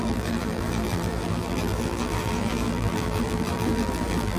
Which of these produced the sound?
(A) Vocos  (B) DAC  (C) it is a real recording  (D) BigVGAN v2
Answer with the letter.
D